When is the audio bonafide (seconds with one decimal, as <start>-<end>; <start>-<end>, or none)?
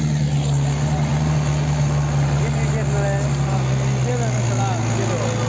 0.0-5.5